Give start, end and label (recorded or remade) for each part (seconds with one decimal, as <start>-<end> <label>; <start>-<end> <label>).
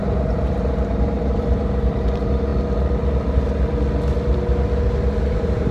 0.0-0.9 recorded; 0.9-2.5 remade; 2.5-5.2 recorded; 5.2-5.7 remade